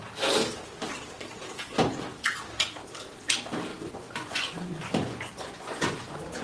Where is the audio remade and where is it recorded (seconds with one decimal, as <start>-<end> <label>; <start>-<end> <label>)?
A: 0.0-3.7 recorded; 3.7-6.4 remade